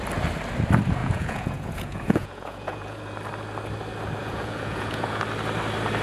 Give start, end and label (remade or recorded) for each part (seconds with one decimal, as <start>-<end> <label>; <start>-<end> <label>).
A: 0.0-1.0 recorded; 1.0-3.0 remade; 3.0-4.2 recorded; 4.2-5.2 remade; 5.2-6.0 recorded